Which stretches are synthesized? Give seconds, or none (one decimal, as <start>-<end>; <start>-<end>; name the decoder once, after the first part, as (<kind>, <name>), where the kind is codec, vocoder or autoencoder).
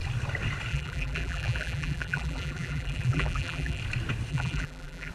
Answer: 0.7-3.8 (vocoder, BigVGAN v2); 4.3-5.1